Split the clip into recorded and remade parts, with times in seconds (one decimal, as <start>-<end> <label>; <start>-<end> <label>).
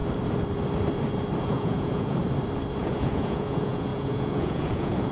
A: 0.0-1.4 recorded; 1.4-2.2 remade; 2.2-2.8 recorded; 2.8-5.1 remade